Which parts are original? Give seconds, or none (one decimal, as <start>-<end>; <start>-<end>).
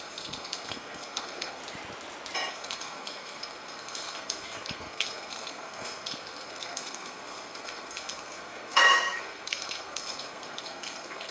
1.6-2.5